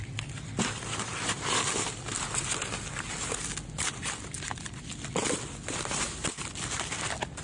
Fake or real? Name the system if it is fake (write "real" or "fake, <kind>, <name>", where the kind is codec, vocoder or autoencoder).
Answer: real